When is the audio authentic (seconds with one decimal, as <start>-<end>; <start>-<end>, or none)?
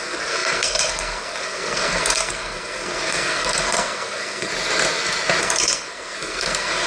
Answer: 4.5-5.4